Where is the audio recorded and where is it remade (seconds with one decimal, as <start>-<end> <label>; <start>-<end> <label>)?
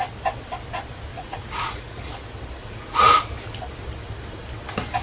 0.0-1.1 recorded; 1.1-2.1 remade; 2.1-2.6 recorded; 2.6-3.2 remade; 3.2-5.0 recorded